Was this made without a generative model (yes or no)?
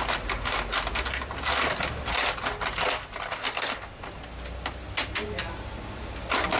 yes